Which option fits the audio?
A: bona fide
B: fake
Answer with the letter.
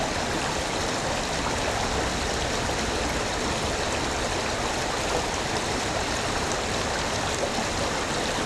A